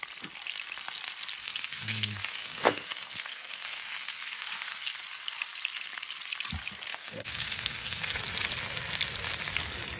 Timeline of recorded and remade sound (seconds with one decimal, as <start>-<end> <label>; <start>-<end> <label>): 0.0-1.4 recorded; 1.4-5.0 remade; 5.0-6.9 recorded; 6.9-8.2 remade; 8.2-10.0 recorded